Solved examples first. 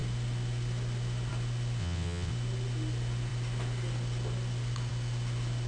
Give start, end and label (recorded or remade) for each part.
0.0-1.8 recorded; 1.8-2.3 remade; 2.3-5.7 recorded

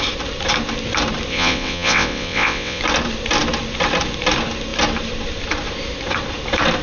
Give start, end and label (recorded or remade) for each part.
0.0-1.3 recorded; 1.3-2.8 remade; 2.8-6.8 recorded

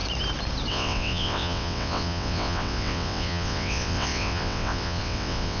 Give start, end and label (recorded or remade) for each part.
0.0-0.7 recorded; 0.7-5.6 remade